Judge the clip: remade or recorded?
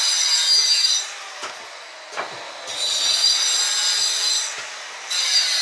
recorded